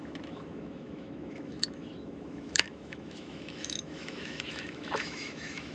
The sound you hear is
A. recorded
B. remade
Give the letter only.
B